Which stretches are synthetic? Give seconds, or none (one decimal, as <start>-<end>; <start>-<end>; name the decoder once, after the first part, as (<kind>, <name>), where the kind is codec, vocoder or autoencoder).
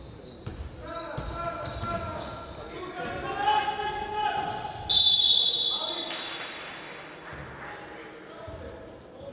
none